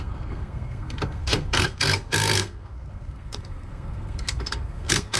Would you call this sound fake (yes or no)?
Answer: yes